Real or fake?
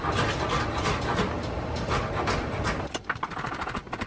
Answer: real